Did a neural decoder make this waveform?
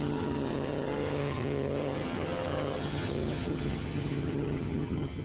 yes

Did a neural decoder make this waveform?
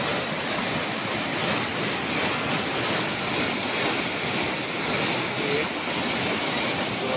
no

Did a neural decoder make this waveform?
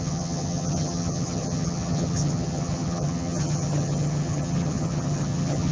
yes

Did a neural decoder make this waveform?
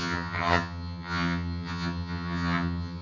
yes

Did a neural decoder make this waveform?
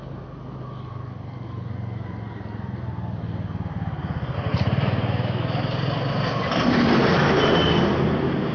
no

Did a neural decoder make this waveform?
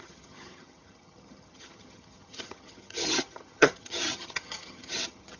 yes